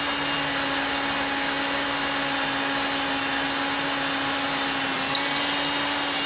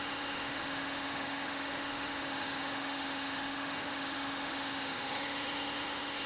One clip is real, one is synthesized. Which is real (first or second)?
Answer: first